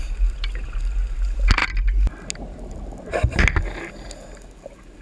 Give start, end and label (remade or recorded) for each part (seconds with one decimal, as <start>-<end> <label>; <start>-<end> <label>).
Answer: 0.0-5.0 recorded